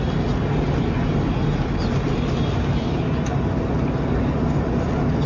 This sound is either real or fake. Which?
real